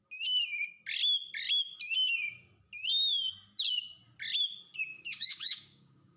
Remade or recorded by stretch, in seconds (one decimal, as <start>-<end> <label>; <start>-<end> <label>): 0.0-4.9 recorded; 4.9-6.2 remade